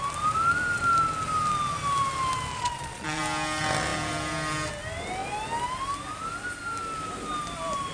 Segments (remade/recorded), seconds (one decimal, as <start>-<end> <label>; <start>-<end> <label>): 0.0-2.5 recorded; 2.5-3.2 remade; 3.2-7.9 recorded